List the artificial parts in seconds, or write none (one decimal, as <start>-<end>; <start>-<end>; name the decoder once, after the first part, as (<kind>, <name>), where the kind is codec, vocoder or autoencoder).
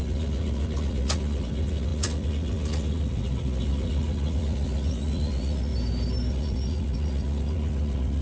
0.0-5.7 (vocoder, Vocos); 6.3-8.2